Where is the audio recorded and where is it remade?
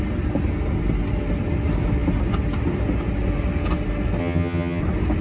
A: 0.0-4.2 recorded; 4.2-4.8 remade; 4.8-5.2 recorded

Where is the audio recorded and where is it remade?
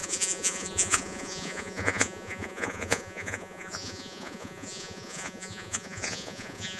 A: 0.0-6.8 remade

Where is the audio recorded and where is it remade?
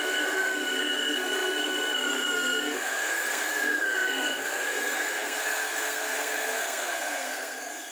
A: 0.0-7.9 remade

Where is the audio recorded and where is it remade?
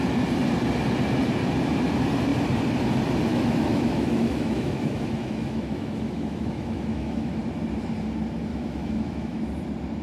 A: 0.0-3.3 recorded; 3.3-7.4 remade; 7.4-8.5 recorded; 8.5-9.4 remade; 9.4-10.0 recorded